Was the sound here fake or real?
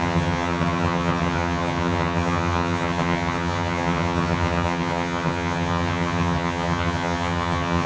fake